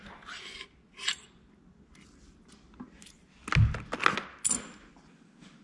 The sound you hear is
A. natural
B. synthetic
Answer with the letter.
A